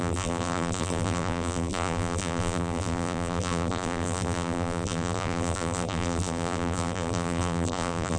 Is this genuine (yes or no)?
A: no